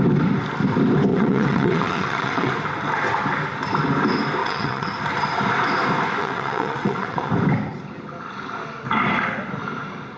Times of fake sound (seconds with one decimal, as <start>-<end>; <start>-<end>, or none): 1.1-2.5; 4.4-4.9; 6.2-7.3